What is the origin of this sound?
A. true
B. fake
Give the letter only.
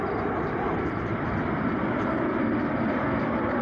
B